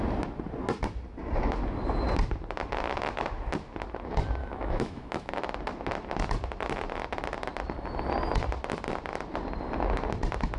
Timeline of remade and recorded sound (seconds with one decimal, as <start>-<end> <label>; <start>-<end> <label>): 0.0-4.4 recorded; 4.4-5.3 remade; 5.3-10.6 recorded